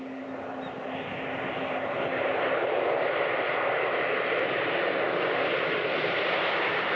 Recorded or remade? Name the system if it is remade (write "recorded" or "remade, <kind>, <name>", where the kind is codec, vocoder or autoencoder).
recorded